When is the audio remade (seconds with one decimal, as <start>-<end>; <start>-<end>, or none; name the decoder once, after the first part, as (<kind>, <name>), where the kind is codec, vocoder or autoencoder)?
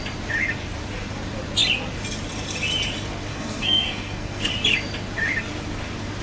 3.3-4.5 (codec, SNAC)